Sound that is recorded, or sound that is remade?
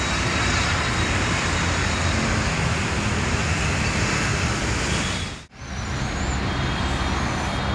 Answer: recorded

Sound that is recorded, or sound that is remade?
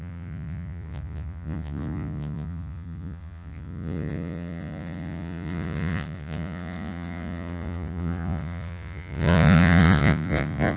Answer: remade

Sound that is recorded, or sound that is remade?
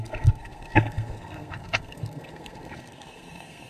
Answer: remade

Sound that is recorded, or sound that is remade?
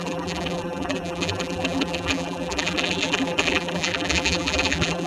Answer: remade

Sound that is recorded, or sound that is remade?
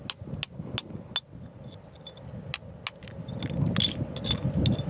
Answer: recorded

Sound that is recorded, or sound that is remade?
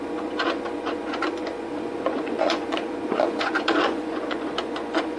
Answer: remade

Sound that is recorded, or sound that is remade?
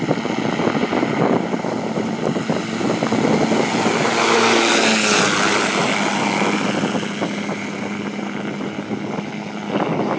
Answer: recorded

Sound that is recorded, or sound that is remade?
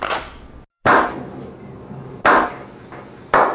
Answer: recorded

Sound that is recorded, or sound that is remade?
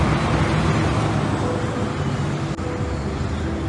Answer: recorded